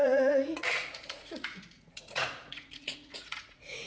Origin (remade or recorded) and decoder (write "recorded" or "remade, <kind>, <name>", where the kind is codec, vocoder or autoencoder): remade, vocoder, Vocos